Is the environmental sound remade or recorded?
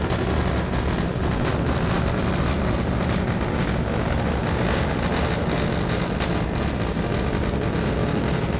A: recorded